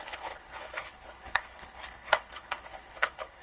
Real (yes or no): no